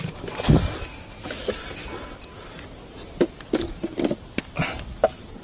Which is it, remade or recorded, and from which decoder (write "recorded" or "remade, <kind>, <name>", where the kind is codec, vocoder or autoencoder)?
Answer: recorded